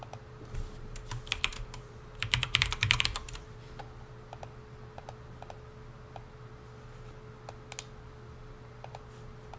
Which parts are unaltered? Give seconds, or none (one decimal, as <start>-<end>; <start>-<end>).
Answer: 0.0-1.5; 3.5-9.6

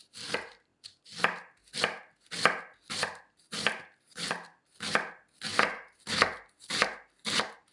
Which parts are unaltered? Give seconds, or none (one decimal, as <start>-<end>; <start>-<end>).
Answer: 0.7-2.9; 4.5-6.1